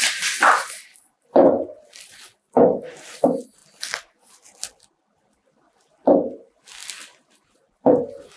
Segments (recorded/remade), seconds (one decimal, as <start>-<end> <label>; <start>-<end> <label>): 0.0-3.6 remade; 3.6-4.9 recorded; 4.9-8.4 remade